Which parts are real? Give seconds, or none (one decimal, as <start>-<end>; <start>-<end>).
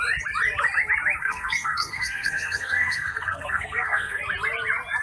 0.0-1.2; 4.2-5.0